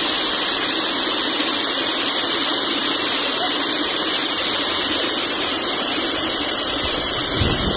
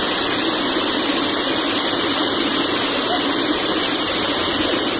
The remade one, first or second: first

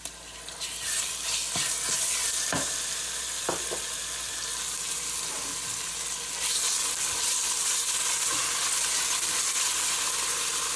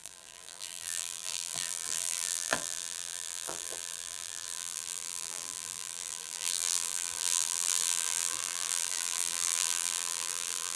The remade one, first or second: second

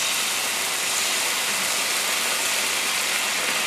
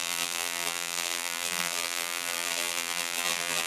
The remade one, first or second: second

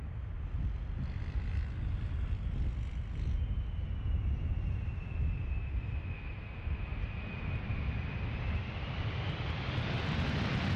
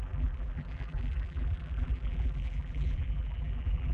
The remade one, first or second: second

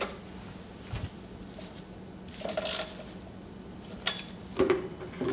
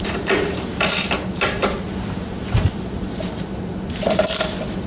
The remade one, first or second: second